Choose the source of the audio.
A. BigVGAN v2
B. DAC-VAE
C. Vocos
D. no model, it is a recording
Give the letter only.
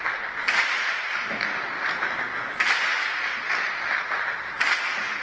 D